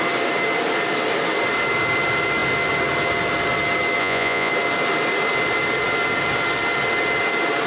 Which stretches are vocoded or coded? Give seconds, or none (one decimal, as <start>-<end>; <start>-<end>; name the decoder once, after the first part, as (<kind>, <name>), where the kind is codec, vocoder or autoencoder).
4.0-4.5 (vocoder, Vocos)